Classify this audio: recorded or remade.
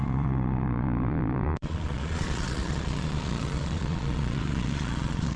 remade